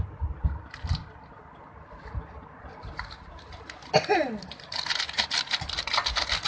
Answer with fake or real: real